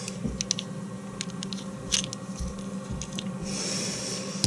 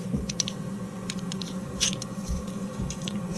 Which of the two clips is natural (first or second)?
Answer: first